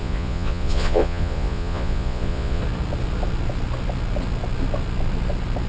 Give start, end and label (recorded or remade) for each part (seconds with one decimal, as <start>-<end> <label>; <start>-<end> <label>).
0.0-2.6 remade; 2.6-5.7 recorded